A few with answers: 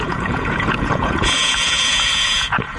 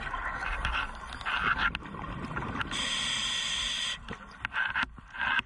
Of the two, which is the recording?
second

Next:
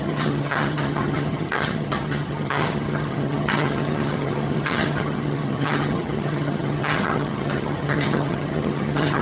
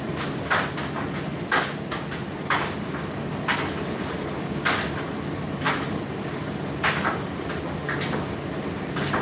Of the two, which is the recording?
second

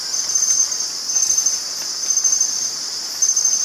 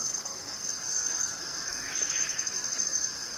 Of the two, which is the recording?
first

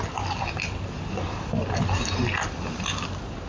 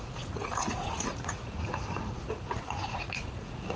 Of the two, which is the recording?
first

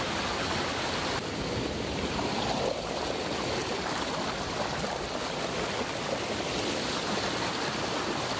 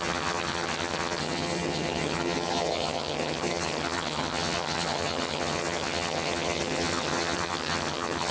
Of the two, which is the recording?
first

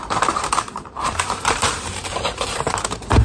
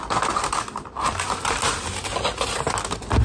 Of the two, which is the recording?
second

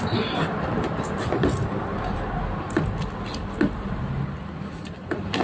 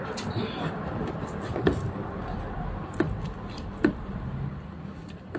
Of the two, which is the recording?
first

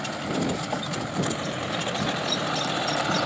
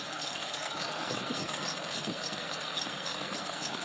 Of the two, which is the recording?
first